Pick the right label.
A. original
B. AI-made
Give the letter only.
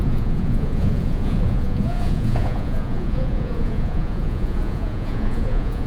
B